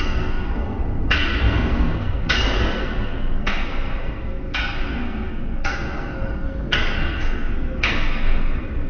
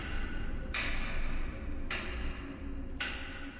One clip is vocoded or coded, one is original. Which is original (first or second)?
second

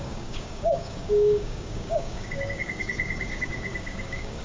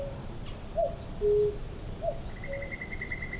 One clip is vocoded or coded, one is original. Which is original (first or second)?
second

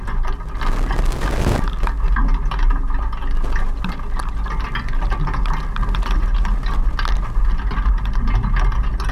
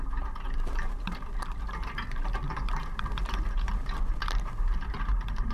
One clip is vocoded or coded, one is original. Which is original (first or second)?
first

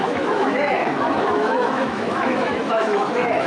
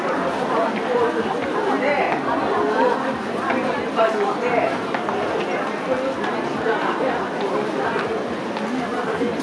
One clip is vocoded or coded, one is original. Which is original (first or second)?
second